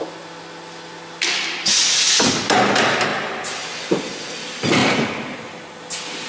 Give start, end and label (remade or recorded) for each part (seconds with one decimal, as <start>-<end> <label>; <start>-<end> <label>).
0.0-6.3 recorded